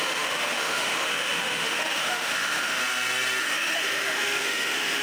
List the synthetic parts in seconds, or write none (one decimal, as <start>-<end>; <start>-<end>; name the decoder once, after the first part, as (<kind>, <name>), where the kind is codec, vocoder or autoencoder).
0.0-2.8 (autoencoder, DAC-VAE); 3.4-5.0